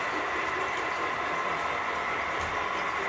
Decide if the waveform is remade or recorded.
recorded